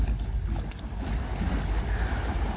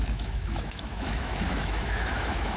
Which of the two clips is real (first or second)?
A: first